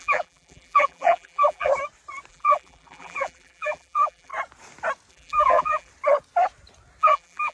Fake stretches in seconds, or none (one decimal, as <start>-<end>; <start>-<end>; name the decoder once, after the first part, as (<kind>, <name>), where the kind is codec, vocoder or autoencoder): 0.0-1.7 (vocoder, BigVGAN v2); 2.3-4.3; 5.1-5.9; 7.0-7.5